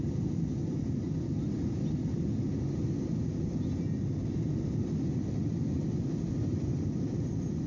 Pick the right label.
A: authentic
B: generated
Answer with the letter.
A